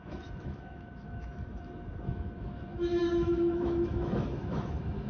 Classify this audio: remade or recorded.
remade